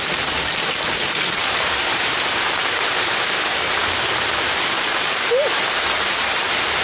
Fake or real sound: fake